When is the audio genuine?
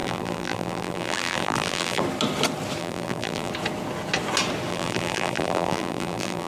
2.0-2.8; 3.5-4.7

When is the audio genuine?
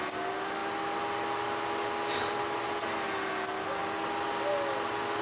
0.0-5.2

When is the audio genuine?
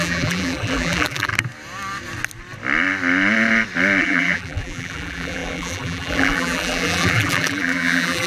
1.3-4.0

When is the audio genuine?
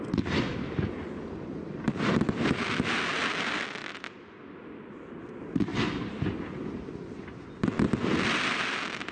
0.0-3.8; 4.4-5.7; 8.4-9.1